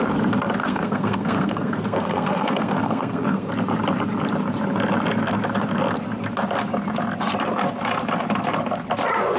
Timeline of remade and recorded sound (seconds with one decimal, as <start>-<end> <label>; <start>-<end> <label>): 0.0-0.6 recorded; 0.6-3.5 remade; 3.5-9.4 recorded